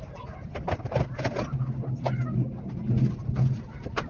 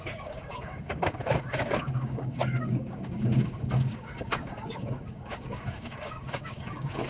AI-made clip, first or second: second